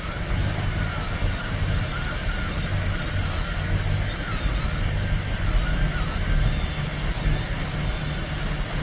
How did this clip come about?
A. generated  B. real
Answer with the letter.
B